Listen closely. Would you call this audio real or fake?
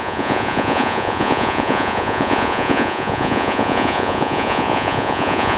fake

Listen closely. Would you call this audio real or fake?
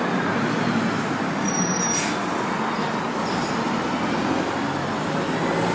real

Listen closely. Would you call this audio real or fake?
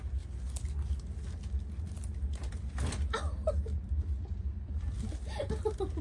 real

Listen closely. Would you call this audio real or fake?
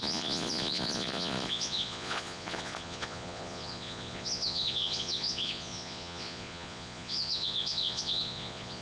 fake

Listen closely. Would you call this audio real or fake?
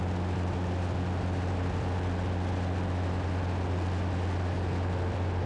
real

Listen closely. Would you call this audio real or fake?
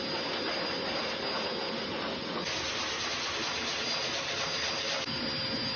real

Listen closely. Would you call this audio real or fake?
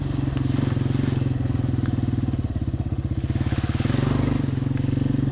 real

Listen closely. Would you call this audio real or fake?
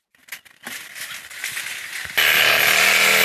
real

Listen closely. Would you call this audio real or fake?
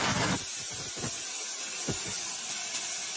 real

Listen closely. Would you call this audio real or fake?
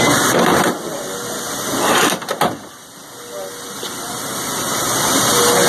real